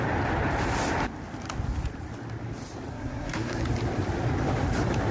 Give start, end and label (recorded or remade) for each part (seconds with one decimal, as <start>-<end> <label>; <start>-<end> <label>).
0.0-2.9 recorded; 2.9-3.6 remade; 3.6-5.1 recorded